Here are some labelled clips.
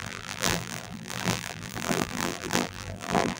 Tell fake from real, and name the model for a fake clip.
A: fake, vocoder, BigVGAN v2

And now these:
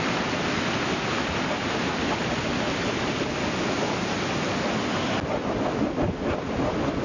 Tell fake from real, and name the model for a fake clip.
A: real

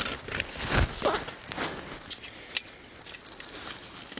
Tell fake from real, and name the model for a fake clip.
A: real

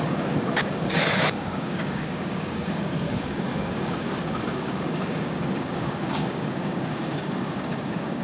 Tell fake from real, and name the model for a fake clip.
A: fake, codec, DAC